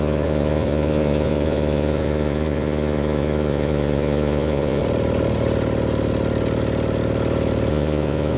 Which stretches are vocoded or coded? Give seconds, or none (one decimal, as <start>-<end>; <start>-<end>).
0.0-4.8; 7.7-8.4